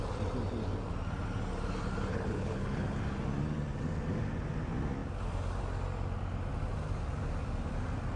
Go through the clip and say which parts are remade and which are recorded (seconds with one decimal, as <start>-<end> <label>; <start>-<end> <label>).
0.0-2.1 recorded; 2.1-2.9 remade; 2.9-8.2 recorded